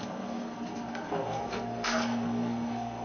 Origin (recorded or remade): remade